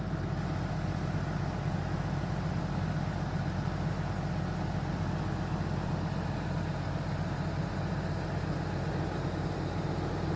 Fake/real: real